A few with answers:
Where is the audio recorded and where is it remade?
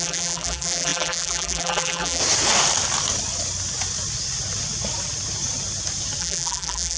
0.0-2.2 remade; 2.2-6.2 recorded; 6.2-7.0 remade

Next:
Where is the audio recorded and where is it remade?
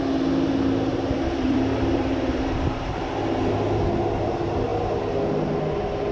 0.0-0.9 recorded; 0.9-2.9 remade; 2.9-6.1 recorded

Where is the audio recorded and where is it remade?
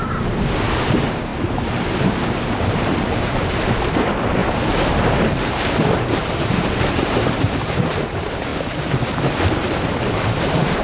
0.0-8.5 remade; 8.5-10.0 recorded; 10.0-10.8 remade